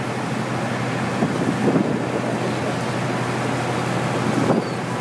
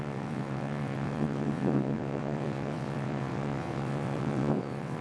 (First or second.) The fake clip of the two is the second